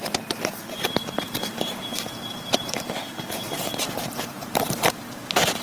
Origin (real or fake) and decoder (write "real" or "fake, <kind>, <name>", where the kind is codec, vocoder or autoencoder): fake, vocoder, BigVGAN v2